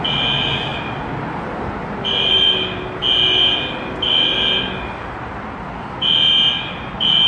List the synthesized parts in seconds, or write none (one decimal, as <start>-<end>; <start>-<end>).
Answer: none